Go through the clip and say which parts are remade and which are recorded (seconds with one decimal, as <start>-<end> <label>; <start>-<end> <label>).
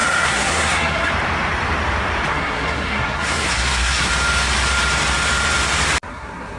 0.0-1.1 remade; 1.1-2.3 recorded; 2.3-4.1 remade; 4.1-6.1 recorded; 6.1-6.6 remade